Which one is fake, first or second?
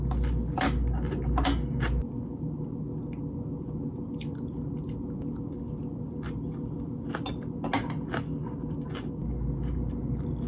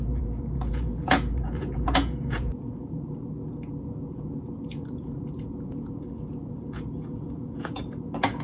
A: second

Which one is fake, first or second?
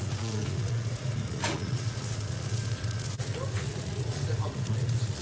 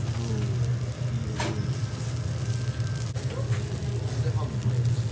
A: first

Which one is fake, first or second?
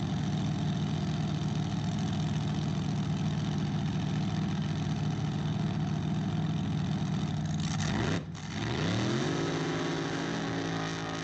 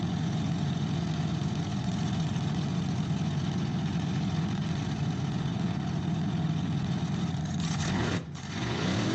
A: second